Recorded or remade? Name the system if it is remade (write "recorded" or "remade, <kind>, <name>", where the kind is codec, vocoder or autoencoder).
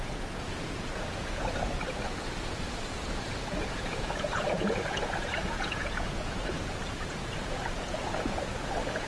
remade, vocoder, Vocos